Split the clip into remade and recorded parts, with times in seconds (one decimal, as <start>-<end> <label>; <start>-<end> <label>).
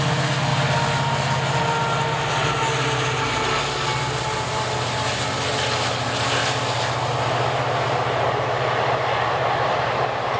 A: 0.0-10.4 recorded